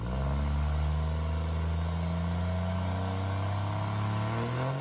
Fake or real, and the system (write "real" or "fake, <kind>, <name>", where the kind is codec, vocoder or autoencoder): real